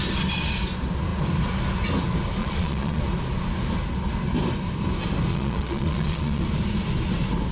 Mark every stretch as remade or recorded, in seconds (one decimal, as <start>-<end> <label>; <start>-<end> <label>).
0.0-2.4 recorded; 2.4-3.0 remade; 3.0-5.3 recorded; 5.3-6.4 remade; 6.4-7.5 recorded